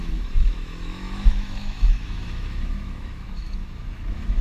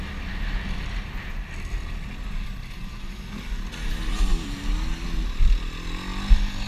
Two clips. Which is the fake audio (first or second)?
first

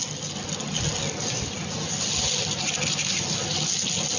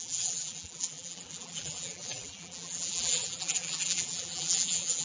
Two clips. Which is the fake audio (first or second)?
second